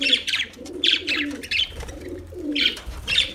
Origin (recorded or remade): remade